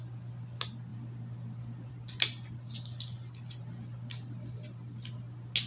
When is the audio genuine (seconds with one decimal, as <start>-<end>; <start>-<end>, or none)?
0.0-5.7